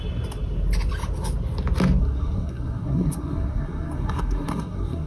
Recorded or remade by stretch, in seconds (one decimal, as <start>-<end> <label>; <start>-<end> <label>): 0.0-2.0 recorded; 2.0-5.1 remade